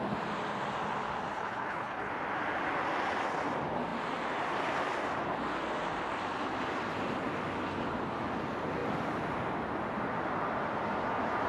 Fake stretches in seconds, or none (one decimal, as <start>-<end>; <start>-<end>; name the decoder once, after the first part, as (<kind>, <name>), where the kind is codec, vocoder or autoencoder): 1.3-2.1 (codec, HILCodec)